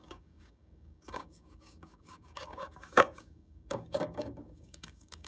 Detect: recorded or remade remade